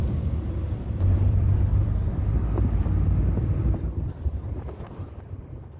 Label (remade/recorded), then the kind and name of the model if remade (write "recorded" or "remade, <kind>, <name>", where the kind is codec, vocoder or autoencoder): remade, vocoder, BigVGAN v2